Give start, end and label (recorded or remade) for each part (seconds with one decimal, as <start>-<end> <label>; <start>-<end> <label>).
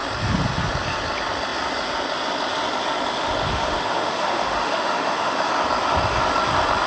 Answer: 0.0-3.5 recorded; 3.5-5.5 remade; 5.5-6.9 recorded